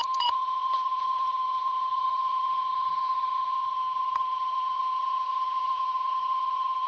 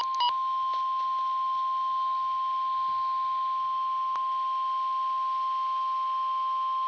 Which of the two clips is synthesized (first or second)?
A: first